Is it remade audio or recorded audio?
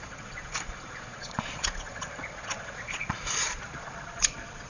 remade